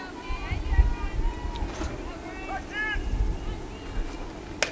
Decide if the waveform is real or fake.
real